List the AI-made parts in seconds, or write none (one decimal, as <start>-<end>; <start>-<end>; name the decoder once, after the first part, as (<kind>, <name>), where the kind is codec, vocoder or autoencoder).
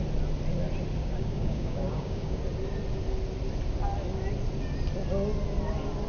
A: 1.0-2.4 (codec, DAC)